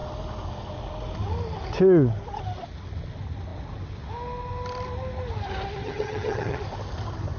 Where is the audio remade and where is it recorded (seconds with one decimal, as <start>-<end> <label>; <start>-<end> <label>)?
0.0-5.8 recorded; 5.8-6.6 remade; 6.6-7.4 recorded